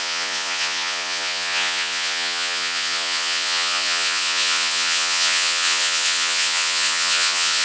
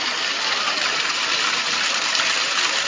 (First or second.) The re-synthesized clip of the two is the first